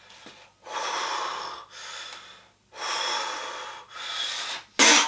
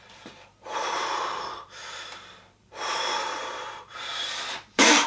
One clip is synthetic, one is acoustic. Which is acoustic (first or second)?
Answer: first